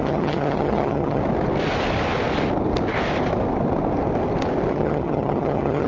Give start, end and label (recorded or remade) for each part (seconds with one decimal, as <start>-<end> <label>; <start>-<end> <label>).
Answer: 0.0-1.2 remade; 1.2-4.7 recorded; 4.7-5.9 remade